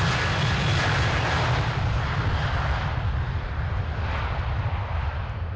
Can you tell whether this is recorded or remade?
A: remade